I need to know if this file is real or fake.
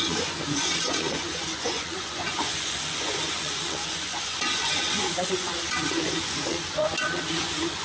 fake